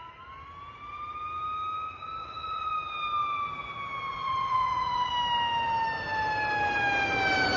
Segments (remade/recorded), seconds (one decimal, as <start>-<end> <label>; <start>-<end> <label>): 0.0-2.2 recorded; 2.2-2.7 remade; 2.7-4.1 recorded; 4.1-5.1 remade; 5.1-7.6 recorded